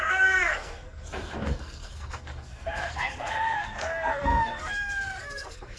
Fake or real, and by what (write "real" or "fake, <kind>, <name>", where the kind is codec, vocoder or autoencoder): fake, codec, SNAC